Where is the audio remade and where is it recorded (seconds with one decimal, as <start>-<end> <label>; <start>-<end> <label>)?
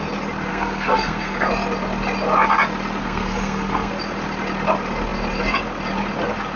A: 0.0-0.5 recorded; 0.5-1.5 remade; 1.5-3.0 recorded; 3.0-3.9 remade; 3.9-6.6 recorded